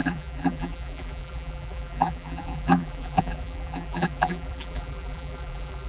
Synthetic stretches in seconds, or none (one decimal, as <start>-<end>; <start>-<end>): 0.0-5.9